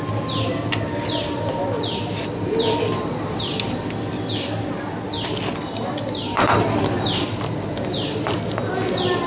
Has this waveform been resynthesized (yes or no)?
no